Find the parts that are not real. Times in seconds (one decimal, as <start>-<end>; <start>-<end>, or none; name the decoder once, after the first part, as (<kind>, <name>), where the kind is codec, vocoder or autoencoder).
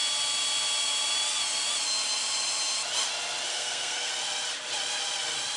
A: 3.5-4.1 (codec, SNAC)